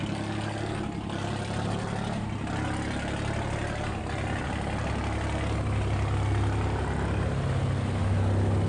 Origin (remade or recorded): recorded